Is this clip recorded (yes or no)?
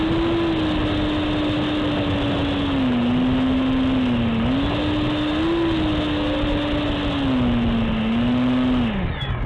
yes